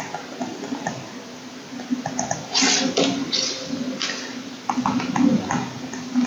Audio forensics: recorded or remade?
recorded